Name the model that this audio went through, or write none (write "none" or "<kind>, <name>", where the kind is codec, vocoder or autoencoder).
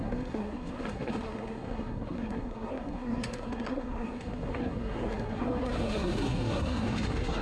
codec, SNAC